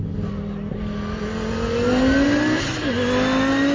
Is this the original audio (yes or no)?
yes